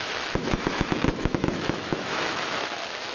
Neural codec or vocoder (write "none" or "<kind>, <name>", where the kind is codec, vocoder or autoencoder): autoencoder, DAC-VAE